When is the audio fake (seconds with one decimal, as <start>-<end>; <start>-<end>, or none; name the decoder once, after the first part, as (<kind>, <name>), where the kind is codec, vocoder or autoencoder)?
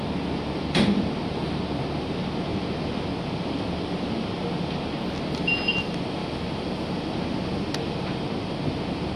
none